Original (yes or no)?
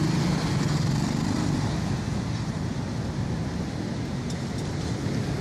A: yes